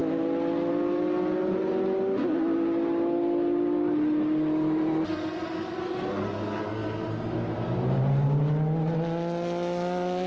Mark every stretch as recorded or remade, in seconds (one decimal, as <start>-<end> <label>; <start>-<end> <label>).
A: 0.0-10.3 recorded